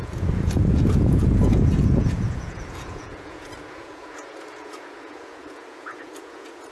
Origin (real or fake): fake